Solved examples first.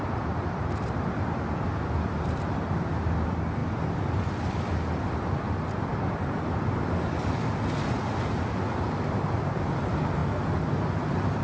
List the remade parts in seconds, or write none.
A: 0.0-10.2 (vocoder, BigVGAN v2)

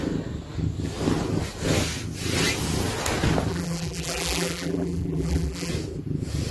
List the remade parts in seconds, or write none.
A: 3.5-5.7 (vocoder, BigVGAN v2)

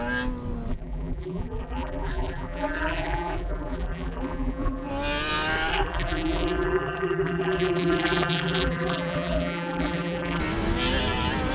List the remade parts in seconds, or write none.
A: 0.7-4.9 (vocoder, BigVGAN v2); 5.7-10.4

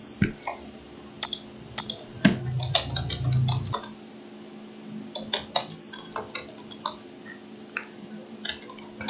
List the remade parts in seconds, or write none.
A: none

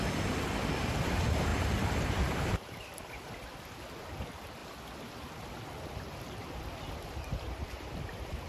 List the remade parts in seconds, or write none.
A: 1.5-3.1 (vocoder, BigVGAN v2)

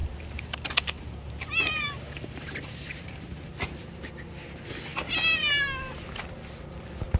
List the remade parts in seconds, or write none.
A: 0.0-3.5 (vocoder, BigVGAN v2)

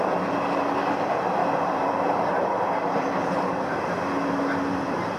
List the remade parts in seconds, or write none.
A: 1.4-3.7 (vocoder, BigVGAN v2)

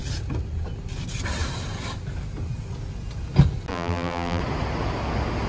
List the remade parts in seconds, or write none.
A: 3.7-4.4 (vocoder, BigVGAN v2)